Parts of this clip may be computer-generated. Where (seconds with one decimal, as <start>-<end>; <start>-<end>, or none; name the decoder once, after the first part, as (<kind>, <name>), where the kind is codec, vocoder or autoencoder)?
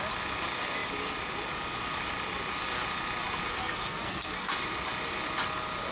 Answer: 3.5-4.5 (codec, SNAC)